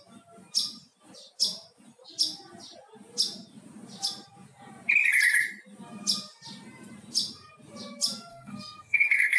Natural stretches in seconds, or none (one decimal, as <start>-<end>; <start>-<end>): 0.0-8.3